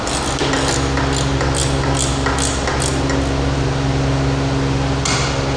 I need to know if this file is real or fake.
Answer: real